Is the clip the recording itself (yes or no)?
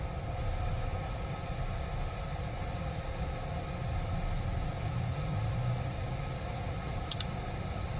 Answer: yes